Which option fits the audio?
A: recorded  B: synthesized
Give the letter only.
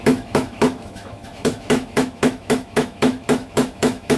B